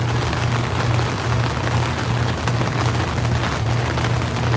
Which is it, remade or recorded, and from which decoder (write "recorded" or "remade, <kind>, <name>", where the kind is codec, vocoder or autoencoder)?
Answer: recorded